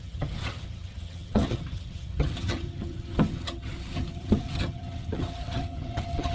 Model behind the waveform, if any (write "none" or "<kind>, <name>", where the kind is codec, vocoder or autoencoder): vocoder, HiFi-GAN